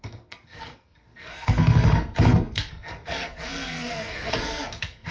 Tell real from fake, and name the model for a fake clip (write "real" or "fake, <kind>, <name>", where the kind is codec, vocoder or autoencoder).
fake, codec, SNAC